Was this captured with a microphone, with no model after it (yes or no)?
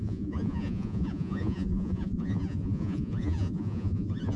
no